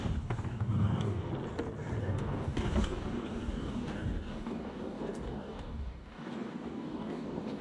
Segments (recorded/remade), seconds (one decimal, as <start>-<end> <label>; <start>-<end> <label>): 0.0-1.3 remade; 1.3-2.0 recorded; 2.0-7.6 remade